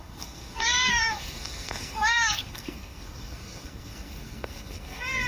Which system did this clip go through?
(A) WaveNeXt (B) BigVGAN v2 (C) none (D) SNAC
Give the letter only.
D